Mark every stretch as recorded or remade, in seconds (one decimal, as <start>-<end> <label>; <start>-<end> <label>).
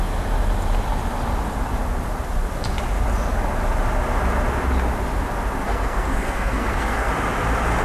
0.0-5.6 recorded; 5.6-7.1 remade; 7.1-7.8 recorded